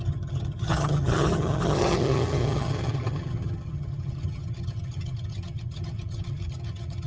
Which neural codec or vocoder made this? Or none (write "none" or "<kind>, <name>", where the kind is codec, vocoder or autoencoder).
vocoder, HiFi-GAN